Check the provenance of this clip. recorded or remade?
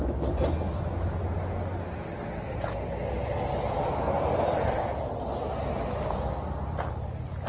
recorded